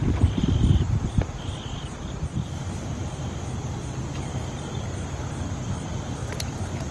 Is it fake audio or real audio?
real